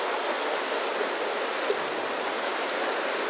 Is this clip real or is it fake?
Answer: real